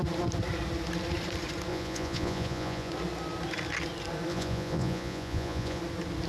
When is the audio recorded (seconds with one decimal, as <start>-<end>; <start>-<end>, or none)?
0.0-1.7; 2.9-4.3; 5.8-6.3